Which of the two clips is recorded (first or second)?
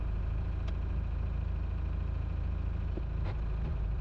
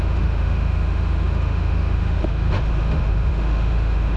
first